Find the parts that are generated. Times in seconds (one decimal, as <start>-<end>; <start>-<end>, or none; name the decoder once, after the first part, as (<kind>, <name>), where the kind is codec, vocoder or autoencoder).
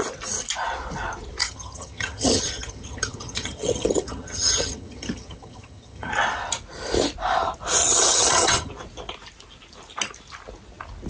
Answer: 1.4-6.1 (vocoder, HiFi-GAN); 7.8-8.7